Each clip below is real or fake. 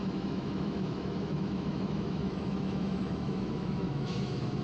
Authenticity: fake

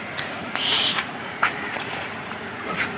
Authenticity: fake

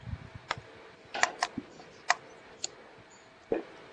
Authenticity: real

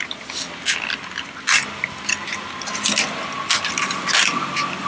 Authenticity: real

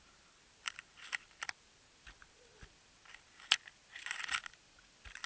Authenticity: real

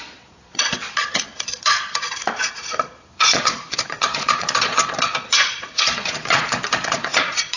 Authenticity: fake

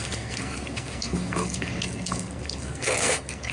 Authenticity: fake